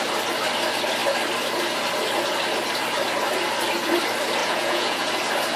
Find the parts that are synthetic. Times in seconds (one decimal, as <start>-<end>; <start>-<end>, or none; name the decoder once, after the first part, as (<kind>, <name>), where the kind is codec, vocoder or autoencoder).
4.4-5.1 (vocoder, Vocos)